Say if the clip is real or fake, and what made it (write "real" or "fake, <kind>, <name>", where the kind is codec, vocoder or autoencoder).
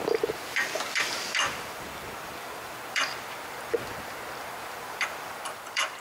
fake, vocoder, BigVGAN v2